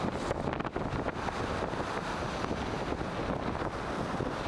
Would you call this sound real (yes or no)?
yes